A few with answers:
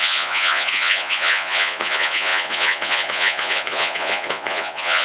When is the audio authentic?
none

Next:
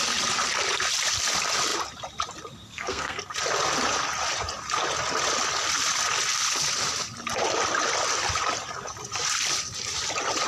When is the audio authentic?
0.0-2.7; 3.2-10.5

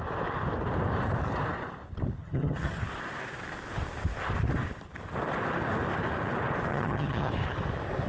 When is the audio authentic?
0.0-2.2; 2.8-6.7; 7.3-8.1

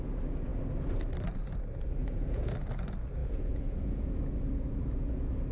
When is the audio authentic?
0.0-2.0; 2.5-3.2; 4.2-5.5

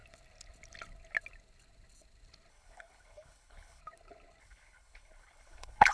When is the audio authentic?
0.0-2.5; 3.8-4.4